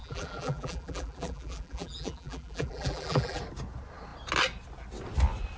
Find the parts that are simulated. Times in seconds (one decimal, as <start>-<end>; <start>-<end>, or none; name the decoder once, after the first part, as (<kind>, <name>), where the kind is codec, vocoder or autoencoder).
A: 0.0-3.4 (vocoder, BigVGAN v2)